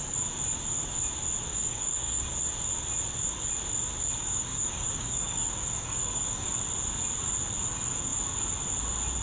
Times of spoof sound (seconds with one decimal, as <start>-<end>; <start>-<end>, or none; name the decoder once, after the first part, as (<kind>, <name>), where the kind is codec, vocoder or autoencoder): 1.5-2.2 (codec, DAC); 4.2-6.5